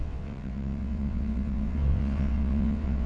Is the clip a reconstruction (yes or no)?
yes